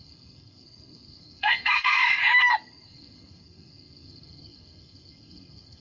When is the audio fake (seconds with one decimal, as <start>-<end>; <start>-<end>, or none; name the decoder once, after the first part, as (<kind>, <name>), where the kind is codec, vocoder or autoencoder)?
0.0-2.0 (codec, SNAC); 2.6-5.8